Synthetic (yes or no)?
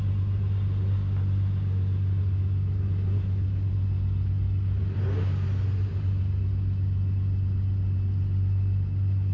no